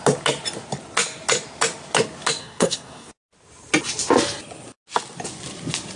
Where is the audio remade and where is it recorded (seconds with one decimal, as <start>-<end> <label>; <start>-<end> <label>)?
0.0-2.4 recorded; 2.4-3.1 remade; 3.1-6.0 recorded